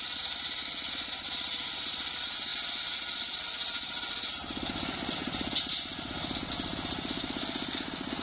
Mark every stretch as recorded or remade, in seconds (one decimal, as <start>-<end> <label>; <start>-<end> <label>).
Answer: 0.0-8.2 recorded